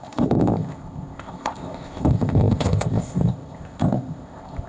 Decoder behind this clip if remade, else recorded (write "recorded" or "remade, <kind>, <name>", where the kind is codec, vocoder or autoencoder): remade, codec, ZipCodec